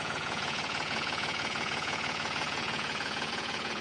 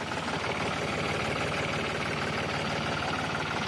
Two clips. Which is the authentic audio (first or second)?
second